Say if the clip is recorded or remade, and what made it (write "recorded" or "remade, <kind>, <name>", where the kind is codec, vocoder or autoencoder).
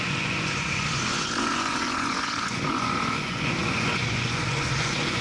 remade, vocoder, Vocos